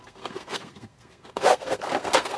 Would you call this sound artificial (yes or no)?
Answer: yes